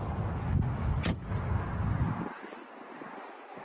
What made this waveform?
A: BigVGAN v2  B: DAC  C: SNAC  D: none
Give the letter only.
D